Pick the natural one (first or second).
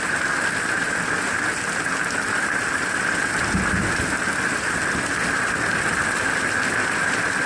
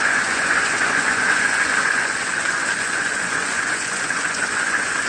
first